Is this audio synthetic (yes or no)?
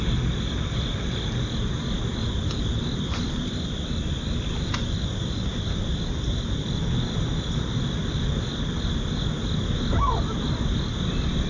no